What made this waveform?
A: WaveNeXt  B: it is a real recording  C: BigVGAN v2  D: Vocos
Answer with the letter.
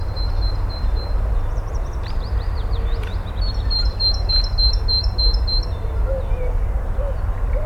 C